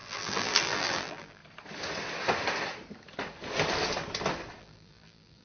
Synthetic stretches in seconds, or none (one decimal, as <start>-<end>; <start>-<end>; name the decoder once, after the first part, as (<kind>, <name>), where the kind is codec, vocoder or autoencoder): 0.0-1.4 (vocoder, BigVGAN v2); 4.6-5.4